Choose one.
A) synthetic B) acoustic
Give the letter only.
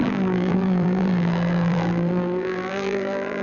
A